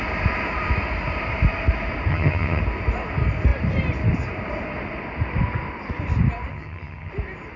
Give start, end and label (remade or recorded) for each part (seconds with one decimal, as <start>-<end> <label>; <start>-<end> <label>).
0.0-2.1 recorded; 2.1-2.6 remade; 2.6-6.5 recorded; 6.5-7.1 remade; 7.1-7.6 recorded

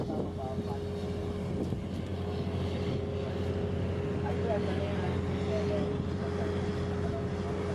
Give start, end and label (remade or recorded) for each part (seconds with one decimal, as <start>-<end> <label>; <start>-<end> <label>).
0.0-7.7 recorded

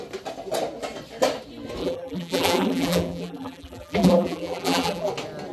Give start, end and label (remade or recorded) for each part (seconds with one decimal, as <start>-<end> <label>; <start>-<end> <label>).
0.0-1.8 recorded; 1.8-5.1 remade; 5.1-5.5 recorded

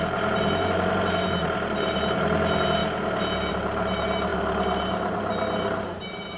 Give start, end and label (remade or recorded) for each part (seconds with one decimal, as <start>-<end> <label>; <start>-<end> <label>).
0.0-2.8 remade; 2.8-3.5 recorded; 3.5-6.4 remade

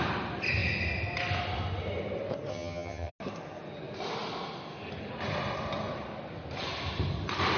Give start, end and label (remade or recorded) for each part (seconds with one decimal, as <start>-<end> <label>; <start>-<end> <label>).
0.0-2.5 recorded; 2.5-3.1 remade; 3.1-7.6 recorded

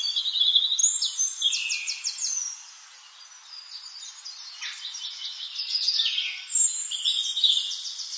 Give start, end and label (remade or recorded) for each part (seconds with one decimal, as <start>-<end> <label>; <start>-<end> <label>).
0.0-8.2 recorded

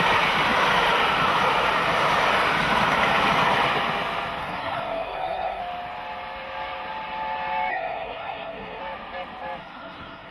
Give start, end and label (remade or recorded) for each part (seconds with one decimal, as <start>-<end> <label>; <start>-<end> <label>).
0.0-4.4 recorded; 4.4-5.6 remade; 5.6-7.7 recorded; 7.7-8.8 remade; 8.8-9.6 recorded; 9.6-10.3 remade